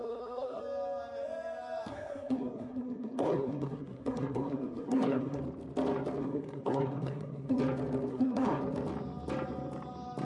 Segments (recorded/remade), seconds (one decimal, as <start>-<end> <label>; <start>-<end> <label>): 0.0-0.6 remade; 0.6-1.9 recorded; 1.9-5.4 remade; 5.4-6.2 recorded; 6.2-7.6 remade; 7.6-8.1 recorded; 8.1-8.6 remade; 8.6-10.2 recorded